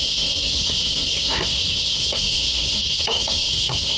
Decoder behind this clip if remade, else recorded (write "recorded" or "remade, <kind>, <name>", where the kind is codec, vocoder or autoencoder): remade, codec, SNAC